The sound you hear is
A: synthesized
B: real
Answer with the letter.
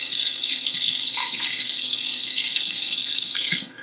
A